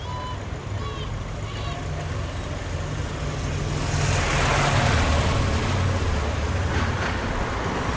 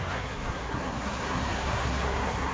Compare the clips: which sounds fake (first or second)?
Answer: second